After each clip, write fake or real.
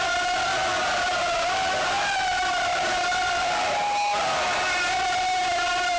real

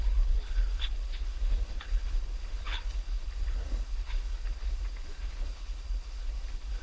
fake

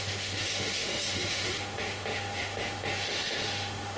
fake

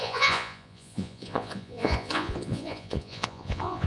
fake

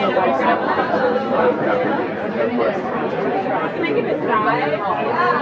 fake